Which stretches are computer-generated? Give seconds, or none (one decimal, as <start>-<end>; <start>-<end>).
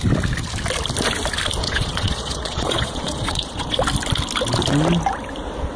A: 1.6-3.8